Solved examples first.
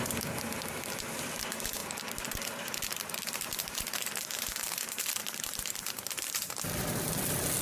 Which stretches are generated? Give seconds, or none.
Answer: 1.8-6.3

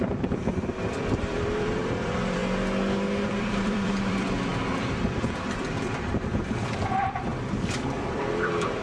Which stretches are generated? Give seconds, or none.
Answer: 0.0-2.4; 3.4-7.3; 8.1-8.8

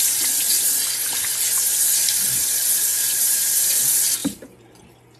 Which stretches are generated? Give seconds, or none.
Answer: 2.9-3.5; 4.2-4.8

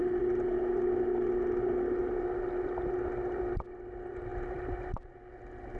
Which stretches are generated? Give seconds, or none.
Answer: 4.3-5.1

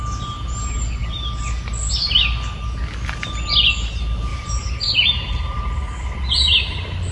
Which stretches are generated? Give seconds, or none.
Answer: 4.3-5.6

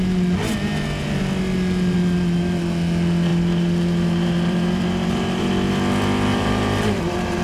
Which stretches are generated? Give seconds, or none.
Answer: 3.3-5.5; 6.3-7.4